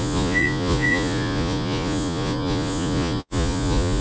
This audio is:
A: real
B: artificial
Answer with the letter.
B